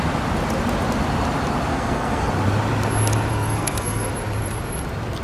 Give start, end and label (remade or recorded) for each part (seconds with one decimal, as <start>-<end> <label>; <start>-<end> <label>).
0.0-1.7 recorded; 1.7-2.3 remade; 2.3-3.3 recorded; 3.3-4.1 remade; 4.1-5.2 recorded